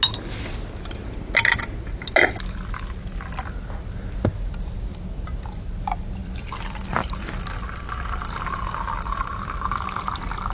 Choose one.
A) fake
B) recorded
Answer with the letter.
B